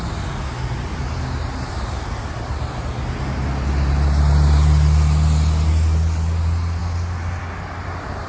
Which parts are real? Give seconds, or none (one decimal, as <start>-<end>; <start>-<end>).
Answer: 0.0-8.3